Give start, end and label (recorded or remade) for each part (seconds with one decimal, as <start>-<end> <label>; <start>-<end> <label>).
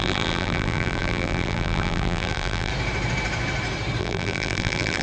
0.0-2.7 remade; 2.7-4.0 recorded; 4.0-5.0 remade